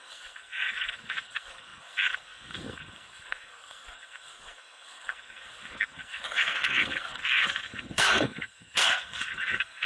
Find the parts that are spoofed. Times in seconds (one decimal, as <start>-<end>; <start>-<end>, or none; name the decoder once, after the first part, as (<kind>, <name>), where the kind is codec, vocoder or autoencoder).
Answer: 0.0-9.9 (codec, SNAC)